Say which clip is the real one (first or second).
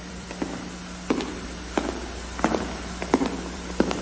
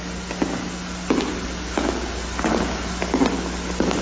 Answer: second